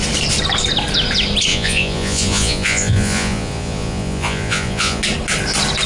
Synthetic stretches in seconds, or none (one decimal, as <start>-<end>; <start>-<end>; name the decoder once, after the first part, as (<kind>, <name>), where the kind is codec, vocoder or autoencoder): 1.5-5.0 (vocoder, Vocos)